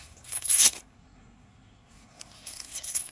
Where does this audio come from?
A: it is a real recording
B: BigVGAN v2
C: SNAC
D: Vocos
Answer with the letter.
C